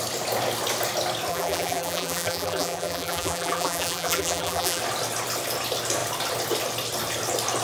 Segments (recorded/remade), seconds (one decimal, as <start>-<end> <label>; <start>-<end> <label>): 0.0-1.3 recorded; 1.3-4.8 remade; 4.8-7.6 recorded